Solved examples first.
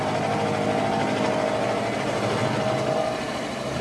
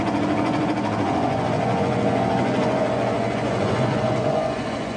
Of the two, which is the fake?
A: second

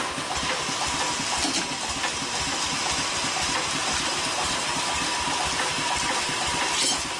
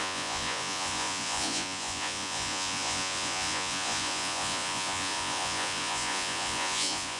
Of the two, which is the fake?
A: second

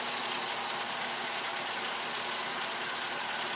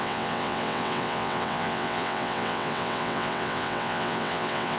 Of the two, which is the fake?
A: second